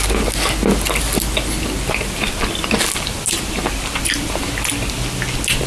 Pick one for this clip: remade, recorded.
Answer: recorded